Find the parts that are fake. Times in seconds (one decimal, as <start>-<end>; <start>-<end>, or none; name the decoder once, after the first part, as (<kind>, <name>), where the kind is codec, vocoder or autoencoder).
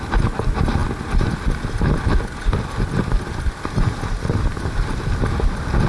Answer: none